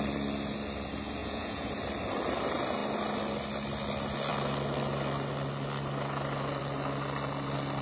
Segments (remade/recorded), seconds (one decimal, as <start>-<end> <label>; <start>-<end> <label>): 0.0-1.2 recorded; 1.2-1.7 remade; 1.7-7.8 recorded